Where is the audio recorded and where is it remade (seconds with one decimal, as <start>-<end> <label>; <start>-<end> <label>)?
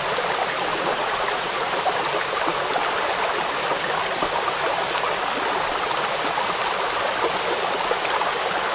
0.0-0.7 recorded; 0.7-1.7 remade; 1.7-8.7 recorded